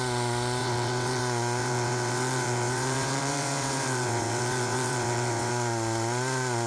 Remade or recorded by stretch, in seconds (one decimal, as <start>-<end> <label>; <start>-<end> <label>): 0.0-0.6 recorded; 0.6-1.2 remade; 1.2-1.6 recorded; 1.6-5.5 remade; 5.5-6.7 recorded

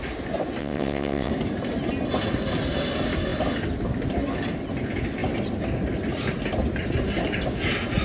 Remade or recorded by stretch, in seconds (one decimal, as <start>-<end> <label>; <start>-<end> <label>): 0.0-0.6 recorded; 0.6-1.3 remade; 1.3-8.0 recorded